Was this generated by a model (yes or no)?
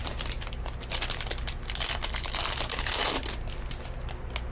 no